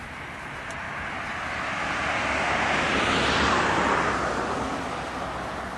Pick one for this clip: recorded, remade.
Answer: recorded